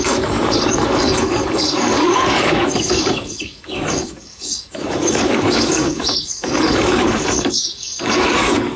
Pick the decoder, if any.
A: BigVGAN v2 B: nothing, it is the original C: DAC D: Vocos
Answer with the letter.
C